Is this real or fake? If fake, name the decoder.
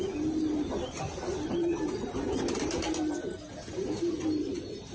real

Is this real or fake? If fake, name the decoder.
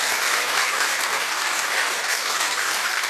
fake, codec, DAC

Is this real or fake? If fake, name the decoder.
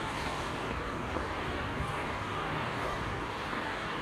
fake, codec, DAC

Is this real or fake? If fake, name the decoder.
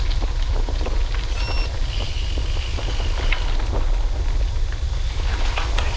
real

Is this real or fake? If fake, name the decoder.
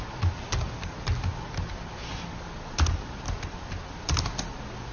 real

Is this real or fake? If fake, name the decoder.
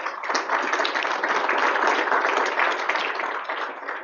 real